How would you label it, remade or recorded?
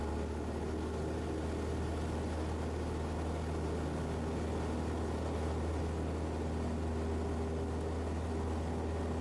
recorded